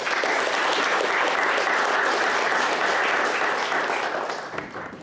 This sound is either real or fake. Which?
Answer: real